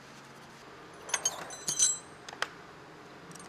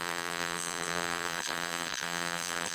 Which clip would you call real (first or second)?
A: first